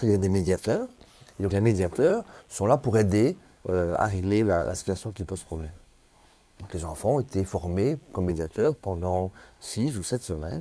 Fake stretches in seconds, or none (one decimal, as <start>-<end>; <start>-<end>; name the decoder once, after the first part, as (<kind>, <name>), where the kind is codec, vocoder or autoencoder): 0.0-0.9 (codec, SNAC); 1.5-2.1; 3.4-6.7; 8.3-10.6